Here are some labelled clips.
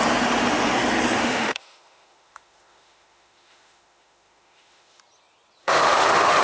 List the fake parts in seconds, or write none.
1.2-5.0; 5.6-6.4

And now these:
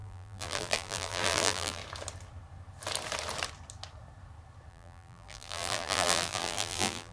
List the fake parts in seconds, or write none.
0.0-1.8; 4.7-7.1

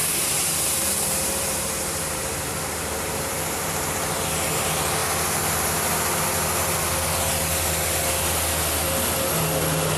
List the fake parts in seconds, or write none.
0.0-3.9

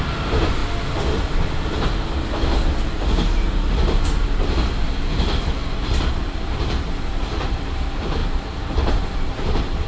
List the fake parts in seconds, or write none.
0.0-0.6; 2.9-9.9

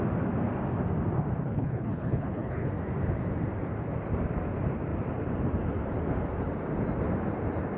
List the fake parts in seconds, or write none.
1.4-2.7

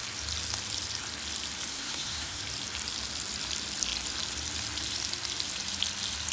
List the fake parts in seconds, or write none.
1.7-2.4

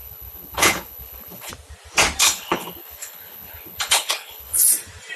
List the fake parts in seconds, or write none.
0.0-1.5; 2.2-4.6